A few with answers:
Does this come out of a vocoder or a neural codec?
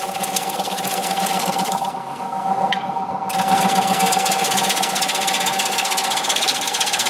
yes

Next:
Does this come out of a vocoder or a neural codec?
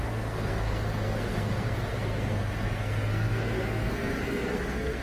yes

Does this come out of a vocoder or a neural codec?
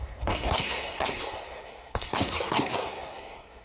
yes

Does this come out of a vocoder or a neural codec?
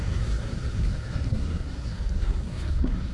yes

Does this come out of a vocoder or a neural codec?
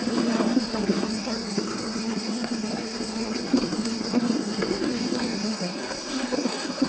yes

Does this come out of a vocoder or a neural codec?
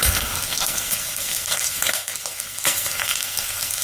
yes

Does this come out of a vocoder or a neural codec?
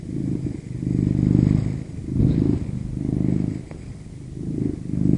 no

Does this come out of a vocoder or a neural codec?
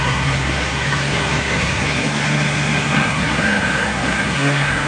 yes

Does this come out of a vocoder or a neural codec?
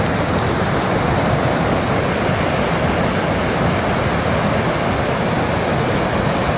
no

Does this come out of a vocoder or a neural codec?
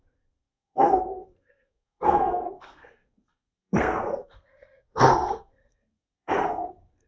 yes